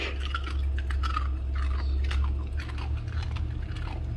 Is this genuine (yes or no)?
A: yes